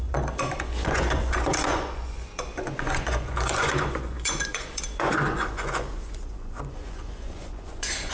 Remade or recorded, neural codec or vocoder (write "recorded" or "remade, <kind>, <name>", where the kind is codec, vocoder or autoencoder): remade, vocoder, Vocos